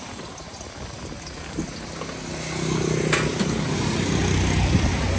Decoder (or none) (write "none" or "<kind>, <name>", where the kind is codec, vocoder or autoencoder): none